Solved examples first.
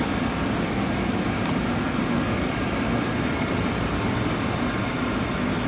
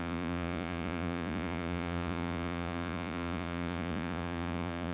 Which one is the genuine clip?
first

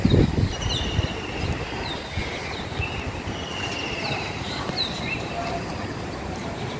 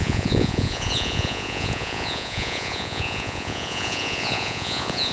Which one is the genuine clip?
first